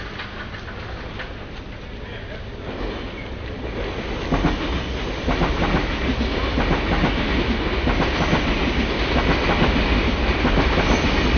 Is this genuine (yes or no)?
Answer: yes